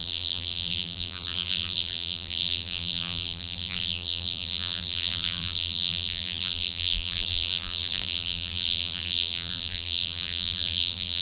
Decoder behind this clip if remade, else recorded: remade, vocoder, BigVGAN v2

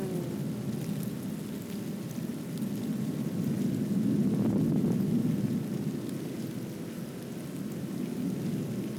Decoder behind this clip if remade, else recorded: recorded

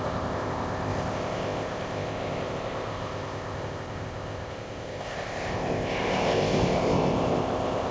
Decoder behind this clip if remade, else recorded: remade, codec, ZipCodec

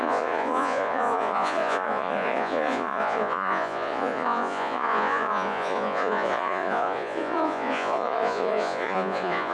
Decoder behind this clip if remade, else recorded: remade, vocoder, Vocos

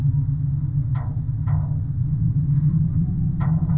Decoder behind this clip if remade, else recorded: recorded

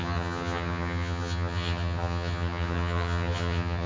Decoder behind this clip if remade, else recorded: remade, vocoder, HiFi-GAN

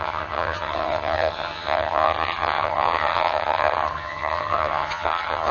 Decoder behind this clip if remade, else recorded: remade, vocoder, HiFi-GAN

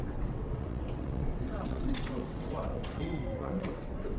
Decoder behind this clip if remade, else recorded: remade, vocoder, WaveNeXt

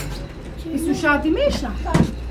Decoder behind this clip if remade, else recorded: recorded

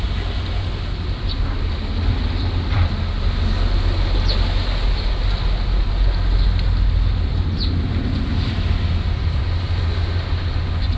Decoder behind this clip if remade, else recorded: recorded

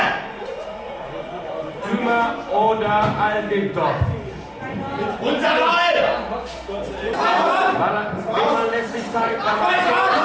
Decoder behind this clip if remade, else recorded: recorded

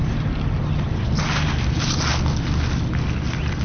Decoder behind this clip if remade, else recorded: recorded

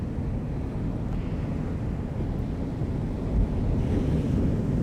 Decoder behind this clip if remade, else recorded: recorded